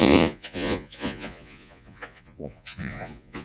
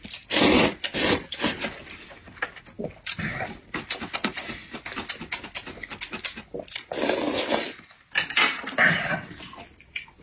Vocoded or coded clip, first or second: first